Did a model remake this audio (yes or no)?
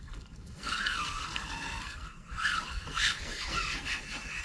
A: yes